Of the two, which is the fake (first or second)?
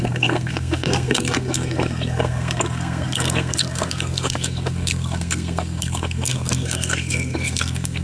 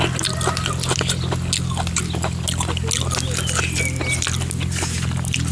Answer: first